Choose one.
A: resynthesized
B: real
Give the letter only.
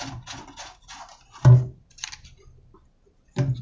B